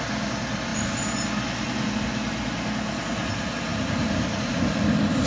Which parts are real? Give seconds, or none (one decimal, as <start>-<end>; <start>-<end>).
0.0-5.3